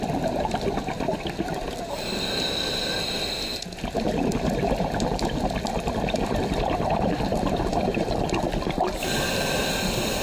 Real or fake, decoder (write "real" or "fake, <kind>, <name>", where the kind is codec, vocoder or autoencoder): real